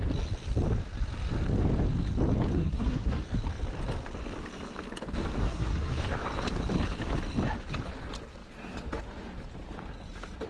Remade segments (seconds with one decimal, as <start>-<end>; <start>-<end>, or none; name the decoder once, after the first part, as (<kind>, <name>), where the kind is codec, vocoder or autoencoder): 2.5-3.2 (codec, SNAC); 5.4-6.0